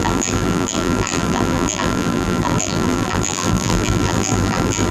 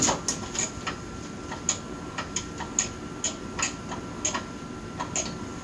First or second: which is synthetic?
first